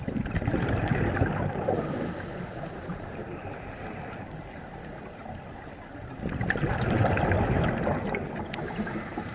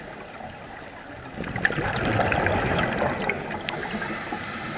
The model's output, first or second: first